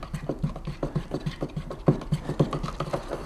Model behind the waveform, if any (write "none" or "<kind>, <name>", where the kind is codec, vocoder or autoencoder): none